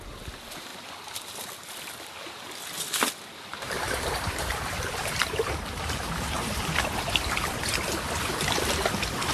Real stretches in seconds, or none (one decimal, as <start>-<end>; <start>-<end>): 0.0-3.5; 7.6-9.3